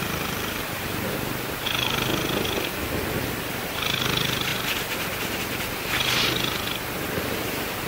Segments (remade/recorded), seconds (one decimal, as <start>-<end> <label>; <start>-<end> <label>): 0.0-2.1 remade; 2.1-3.2 recorded; 3.2-4.5 remade; 4.5-7.2 recorded; 7.2-7.9 remade